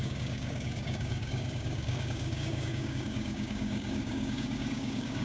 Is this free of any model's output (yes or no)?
no